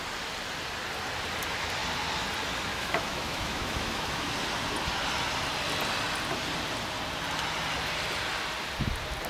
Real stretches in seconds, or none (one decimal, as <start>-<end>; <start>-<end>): 0.0-2.7; 4.3-9.3